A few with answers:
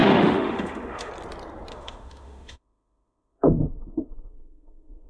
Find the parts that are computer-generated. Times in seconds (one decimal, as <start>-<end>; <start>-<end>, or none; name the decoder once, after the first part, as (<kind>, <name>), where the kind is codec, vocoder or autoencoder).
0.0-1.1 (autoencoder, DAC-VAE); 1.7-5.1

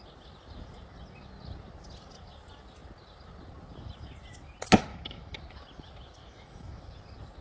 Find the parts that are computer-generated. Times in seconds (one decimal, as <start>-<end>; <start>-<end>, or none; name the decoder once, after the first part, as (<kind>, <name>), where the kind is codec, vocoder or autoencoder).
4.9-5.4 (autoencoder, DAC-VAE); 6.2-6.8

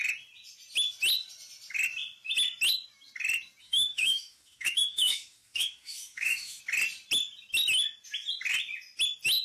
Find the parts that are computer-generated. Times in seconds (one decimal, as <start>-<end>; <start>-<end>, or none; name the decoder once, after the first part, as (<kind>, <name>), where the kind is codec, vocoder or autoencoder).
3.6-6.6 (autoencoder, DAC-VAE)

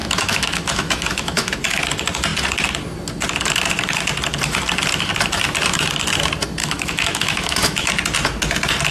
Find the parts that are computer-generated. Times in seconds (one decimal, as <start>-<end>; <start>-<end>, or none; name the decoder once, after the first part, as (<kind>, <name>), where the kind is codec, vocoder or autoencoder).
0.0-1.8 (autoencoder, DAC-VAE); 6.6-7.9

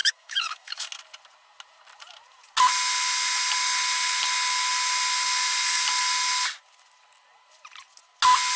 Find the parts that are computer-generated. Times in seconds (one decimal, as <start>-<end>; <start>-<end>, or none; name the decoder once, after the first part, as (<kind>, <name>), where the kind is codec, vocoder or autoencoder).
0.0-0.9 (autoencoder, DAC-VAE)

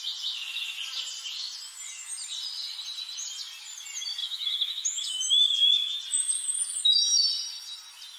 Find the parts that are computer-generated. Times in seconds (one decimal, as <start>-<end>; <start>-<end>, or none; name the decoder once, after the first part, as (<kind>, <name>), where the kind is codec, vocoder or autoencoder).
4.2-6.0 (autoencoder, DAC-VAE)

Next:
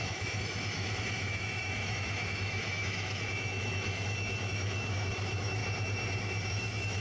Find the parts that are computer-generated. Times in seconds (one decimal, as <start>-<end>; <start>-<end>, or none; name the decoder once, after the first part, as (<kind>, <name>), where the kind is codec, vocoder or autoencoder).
0.0-5.6 (autoencoder, DAC-VAE); 6.5-7.0

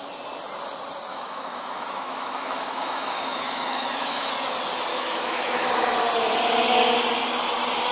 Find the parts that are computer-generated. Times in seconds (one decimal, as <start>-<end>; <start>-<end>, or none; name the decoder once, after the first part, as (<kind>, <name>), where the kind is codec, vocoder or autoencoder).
1.1-4.3 (autoencoder, DAC-VAE); 4.9-6.0